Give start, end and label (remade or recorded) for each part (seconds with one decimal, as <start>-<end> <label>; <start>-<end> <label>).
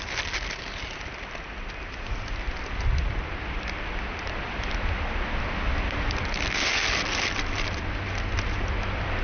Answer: 0.0-9.2 recorded